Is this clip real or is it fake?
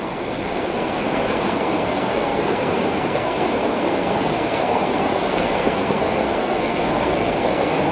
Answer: fake